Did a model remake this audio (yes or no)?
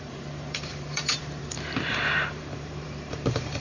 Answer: yes